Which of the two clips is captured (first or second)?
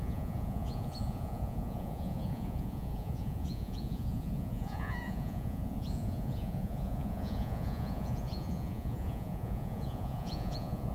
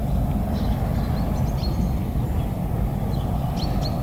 second